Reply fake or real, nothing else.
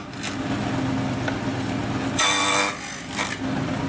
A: real